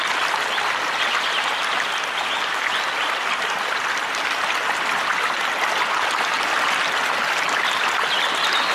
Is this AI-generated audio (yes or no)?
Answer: no